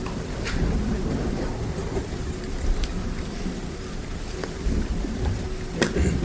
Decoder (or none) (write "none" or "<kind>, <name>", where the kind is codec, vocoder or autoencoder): vocoder, BigVGAN v2